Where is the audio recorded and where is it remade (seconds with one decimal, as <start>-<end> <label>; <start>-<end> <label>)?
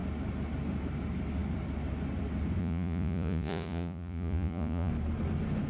0.0-2.6 recorded; 2.6-4.9 remade; 4.9-5.7 recorded